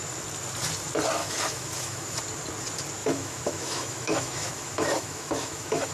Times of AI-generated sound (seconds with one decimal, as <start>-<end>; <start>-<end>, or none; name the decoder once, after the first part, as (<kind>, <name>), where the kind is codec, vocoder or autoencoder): 1.2-2.2 (autoencoder, DAC-VAE); 3.0-5.9